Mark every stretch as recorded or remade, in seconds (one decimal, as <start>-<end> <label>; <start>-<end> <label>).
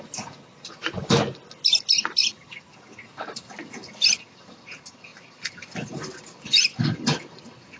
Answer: 0.0-7.8 recorded